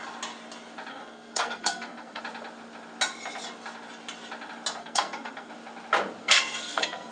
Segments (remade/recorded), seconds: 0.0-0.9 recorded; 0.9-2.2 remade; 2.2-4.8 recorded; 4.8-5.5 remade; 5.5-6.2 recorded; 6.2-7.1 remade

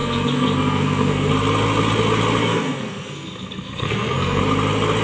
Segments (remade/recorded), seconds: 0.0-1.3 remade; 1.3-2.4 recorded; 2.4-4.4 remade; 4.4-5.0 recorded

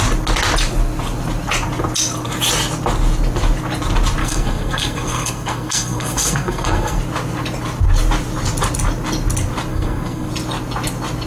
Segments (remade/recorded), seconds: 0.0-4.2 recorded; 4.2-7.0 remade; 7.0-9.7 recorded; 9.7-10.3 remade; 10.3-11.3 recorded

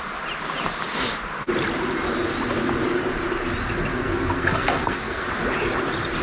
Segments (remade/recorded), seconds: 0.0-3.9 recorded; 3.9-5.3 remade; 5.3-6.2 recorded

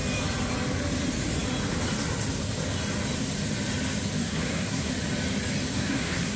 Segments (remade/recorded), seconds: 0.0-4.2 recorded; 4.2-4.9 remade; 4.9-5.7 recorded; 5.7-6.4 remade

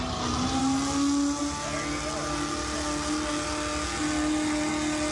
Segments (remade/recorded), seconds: 0.0-5.1 recorded

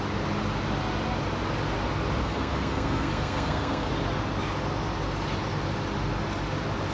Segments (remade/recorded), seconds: 0.0-2.2 recorded; 2.2-3.9 remade; 3.9-6.9 recorded

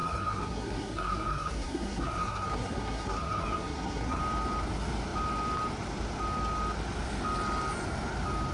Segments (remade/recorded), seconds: 0.0-4.2 remade; 4.2-8.5 recorded